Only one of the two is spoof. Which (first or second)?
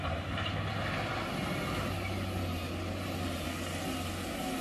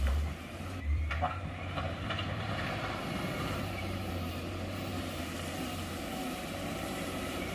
second